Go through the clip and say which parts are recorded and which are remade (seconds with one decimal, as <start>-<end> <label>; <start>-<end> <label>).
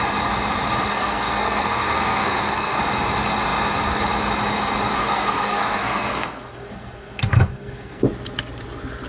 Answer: 0.0-0.9 recorded; 0.9-2.8 remade; 2.8-5.0 recorded; 5.0-8.0 remade; 8.0-9.1 recorded